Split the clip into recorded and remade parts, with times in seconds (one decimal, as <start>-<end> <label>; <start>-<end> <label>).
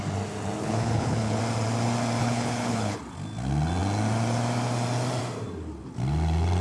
0.0-0.6 recorded; 0.6-1.4 remade; 1.4-2.2 recorded; 2.2-3.0 remade; 3.0-6.6 recorded